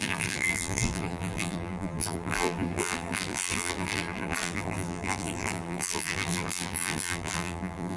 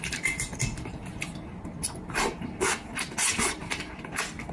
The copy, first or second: first